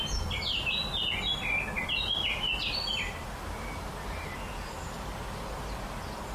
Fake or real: real